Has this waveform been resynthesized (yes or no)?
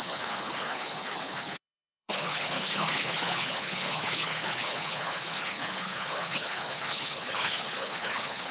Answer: yes